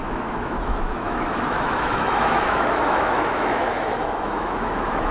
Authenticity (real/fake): fake